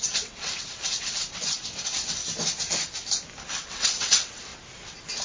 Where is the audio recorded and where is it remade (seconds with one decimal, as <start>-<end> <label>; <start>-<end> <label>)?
0.0-2.2 remade; 2.2-3.7 recorded; 3.7-4.5 remade; 4.5-5.2 recorded

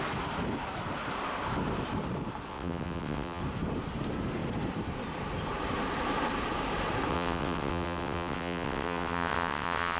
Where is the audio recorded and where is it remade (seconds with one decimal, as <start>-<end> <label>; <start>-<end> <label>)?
0.0-2.5 recorded; 2.5-3.4 remade; 3.4-7.1 recorded; 7.1-10.0 remade

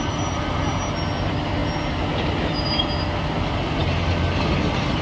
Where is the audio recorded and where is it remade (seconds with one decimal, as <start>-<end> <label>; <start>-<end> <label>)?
0.0-5.0 recorded

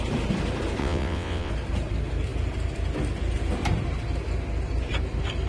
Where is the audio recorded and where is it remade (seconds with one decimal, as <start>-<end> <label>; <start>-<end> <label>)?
0.0-0.8 recorded; 0.8-1.5 remade; 1.5-5.5 recorded

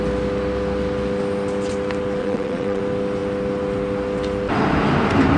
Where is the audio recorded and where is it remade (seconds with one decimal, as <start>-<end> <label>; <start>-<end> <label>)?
0.0-2.2 recorded; 2.2-2.8 remade; 2.8-5.4 recorded

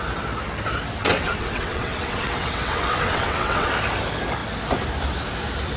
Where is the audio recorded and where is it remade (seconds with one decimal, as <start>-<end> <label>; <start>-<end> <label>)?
0.0-1.0 recorded; 1.0-3.7 remade; 3.7-5.8 recorded

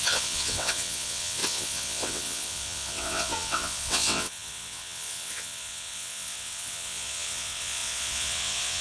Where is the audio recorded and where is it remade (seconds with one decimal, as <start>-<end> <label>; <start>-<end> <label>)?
0.0-8.8 remade

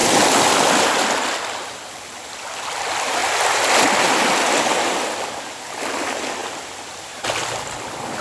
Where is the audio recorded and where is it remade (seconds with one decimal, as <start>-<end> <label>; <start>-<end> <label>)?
0.0-8.2 recorded